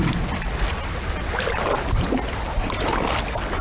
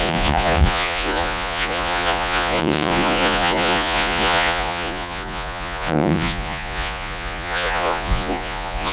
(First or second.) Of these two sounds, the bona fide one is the first